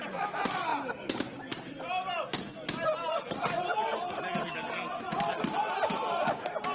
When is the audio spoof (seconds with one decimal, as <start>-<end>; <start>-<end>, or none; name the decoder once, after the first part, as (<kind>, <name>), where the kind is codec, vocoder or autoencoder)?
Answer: none